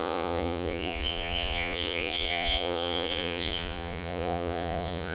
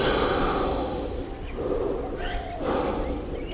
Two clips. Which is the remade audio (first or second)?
first